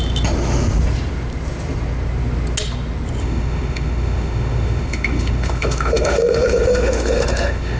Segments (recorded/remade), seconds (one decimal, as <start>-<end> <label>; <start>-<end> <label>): 0.0-3.2 recorded; 3.2-7.8 remade